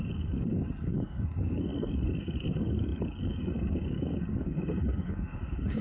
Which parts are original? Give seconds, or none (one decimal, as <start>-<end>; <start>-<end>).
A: 1.7-2.2